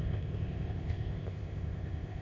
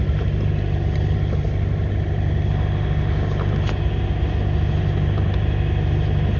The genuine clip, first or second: second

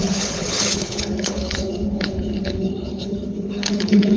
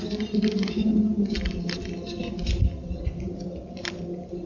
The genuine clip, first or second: second